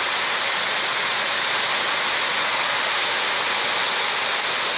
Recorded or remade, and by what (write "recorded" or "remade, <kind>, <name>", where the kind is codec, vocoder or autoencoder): recorded